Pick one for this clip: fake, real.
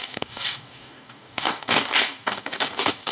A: fake